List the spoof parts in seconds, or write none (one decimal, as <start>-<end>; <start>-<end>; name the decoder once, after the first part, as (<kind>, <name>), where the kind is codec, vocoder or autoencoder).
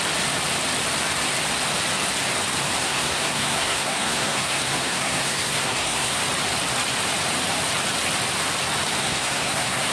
2.8-6.2 (codec, SNAC); 9.0-9.9